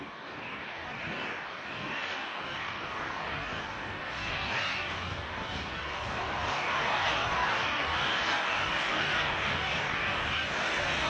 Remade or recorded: remade